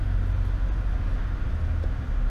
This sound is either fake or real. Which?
real